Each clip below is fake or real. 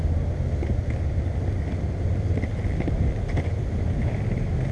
real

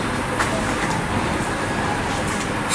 real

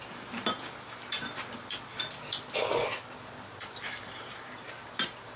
real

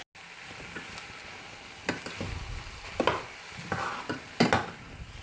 real